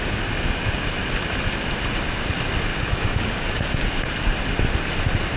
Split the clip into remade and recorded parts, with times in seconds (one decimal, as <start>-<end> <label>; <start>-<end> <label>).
0.0-2.7 recorded; 2.7-4.1 remade; 4.1-5.4 recorded